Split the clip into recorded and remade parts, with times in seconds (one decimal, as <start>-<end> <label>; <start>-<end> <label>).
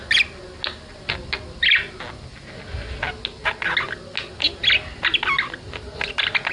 0.0-6.5 recorded